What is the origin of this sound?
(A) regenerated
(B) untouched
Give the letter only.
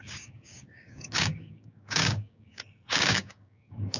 A